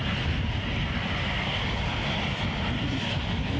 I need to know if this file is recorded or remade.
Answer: recorded